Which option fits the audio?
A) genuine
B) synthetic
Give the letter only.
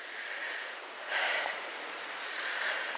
B